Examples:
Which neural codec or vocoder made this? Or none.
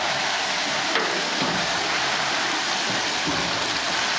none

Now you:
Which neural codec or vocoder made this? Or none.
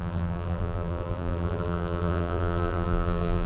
vocoder, BigVGAN v2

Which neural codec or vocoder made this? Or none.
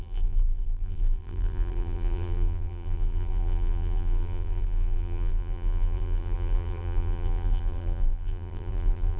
vocoder, BigVGAN v2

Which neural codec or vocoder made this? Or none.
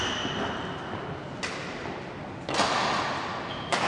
none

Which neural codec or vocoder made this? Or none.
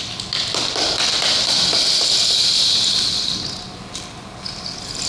none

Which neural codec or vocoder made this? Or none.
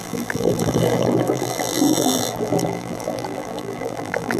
vocoder, BigVGAN v2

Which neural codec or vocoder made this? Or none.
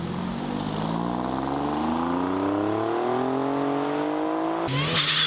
none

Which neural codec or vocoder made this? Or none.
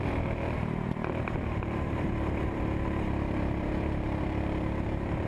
vocoder, BigVGAN v2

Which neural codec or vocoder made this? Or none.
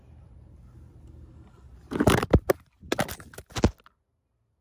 none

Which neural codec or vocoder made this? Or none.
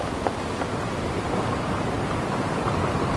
vocoder, BigVGAN v2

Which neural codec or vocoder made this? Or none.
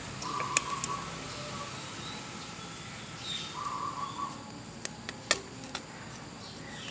none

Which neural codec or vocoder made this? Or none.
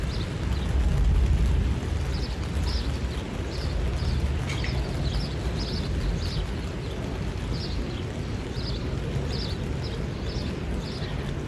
none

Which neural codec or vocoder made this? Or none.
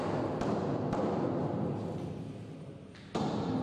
none